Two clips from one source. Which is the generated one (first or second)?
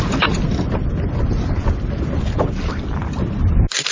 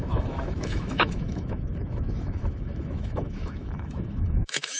second